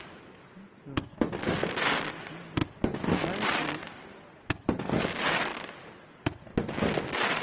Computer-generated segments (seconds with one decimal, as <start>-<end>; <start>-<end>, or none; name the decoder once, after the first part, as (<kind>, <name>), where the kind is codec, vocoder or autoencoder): none